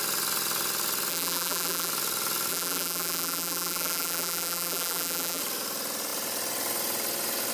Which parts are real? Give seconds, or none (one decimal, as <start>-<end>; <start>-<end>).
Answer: 0.0-1.1; 1.9-2.5; 5.4-7.5